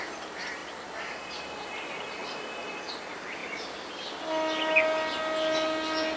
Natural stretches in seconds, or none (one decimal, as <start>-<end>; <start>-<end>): 0.0-6.2